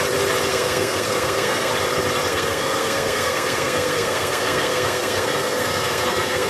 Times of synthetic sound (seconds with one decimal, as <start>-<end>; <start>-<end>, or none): 0.5-1.7; 2.3-6.5